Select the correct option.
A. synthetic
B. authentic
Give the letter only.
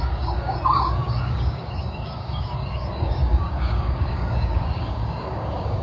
A